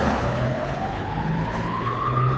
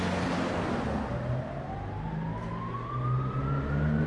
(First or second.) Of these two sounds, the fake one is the first